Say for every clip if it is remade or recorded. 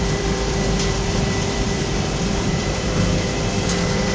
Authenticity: remade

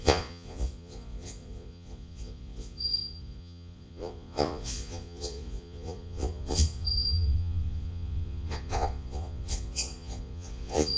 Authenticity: remade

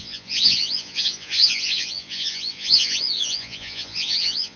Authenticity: remade